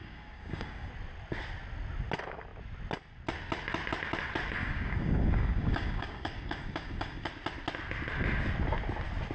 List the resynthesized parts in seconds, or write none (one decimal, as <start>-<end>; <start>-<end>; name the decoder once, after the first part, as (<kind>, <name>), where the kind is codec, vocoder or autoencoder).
0.0-0.9 (codec, DAC); 4.6-7.3